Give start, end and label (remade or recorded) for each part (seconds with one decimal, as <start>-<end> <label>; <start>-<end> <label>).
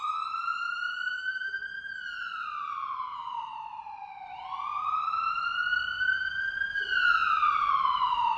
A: 0.0-8.4 remade